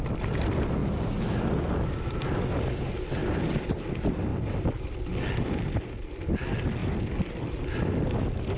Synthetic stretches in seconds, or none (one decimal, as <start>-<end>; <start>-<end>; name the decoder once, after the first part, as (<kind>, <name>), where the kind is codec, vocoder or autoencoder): 0.8-2.2 (vocoder, BigVGAN v2); 6.8-7.8